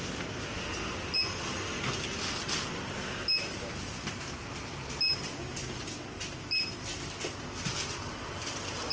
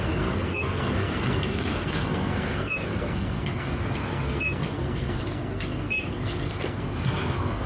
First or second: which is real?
first